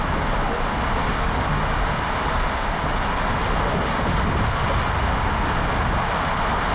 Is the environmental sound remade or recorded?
recorded